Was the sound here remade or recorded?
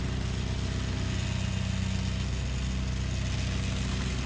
recorded